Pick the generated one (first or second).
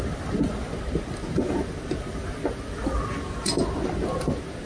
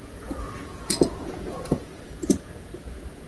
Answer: second